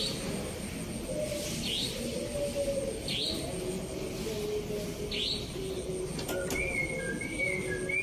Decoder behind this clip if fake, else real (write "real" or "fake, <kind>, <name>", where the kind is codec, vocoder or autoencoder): real